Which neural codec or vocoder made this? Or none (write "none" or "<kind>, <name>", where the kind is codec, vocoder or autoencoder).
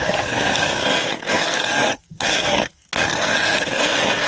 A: codec, SNAC